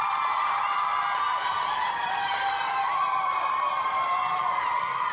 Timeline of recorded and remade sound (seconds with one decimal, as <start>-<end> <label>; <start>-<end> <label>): 0.0-1.4 recorded; 1.4-4.2 remade; 4.2-5.1 recorded